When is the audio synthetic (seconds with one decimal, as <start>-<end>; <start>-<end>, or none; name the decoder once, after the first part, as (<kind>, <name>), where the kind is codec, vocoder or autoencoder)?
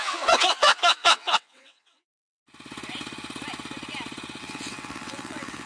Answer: 0.0-2.4 (vocoder, WaveNeXt); 4.4-5.7